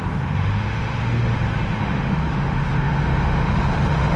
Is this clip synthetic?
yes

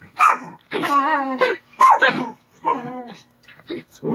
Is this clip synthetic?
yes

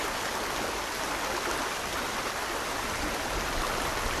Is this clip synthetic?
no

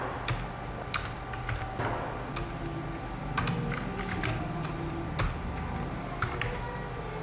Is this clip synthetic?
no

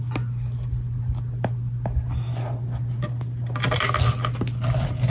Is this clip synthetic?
no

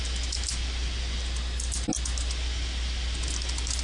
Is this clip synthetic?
no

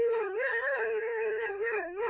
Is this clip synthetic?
yes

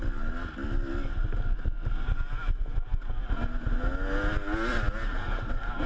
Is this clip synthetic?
no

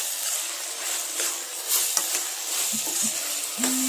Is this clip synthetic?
no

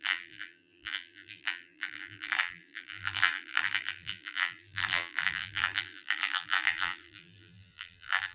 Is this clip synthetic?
yes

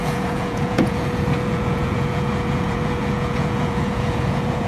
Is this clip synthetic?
yes